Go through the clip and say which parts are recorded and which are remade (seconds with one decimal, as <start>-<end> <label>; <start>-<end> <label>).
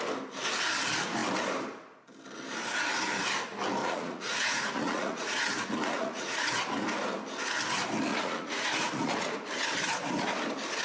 0.0-3.8 recorded; 3.8-6.5 remade; 6.5-8.1 recorded; 8.1-9.3 remade; 9.3-10.8 recorded